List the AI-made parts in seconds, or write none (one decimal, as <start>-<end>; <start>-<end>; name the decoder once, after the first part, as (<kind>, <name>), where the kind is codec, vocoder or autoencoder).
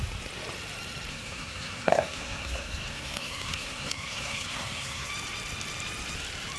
1.1-5.1 (codec, SNAC)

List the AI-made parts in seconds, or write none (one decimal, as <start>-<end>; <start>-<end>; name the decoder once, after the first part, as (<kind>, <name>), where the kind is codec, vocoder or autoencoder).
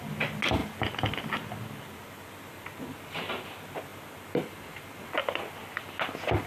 none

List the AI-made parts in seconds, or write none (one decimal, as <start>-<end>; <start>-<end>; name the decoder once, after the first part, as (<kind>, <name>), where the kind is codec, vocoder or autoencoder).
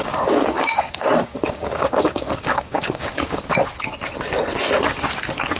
0.0-3.4 (codec, DAC)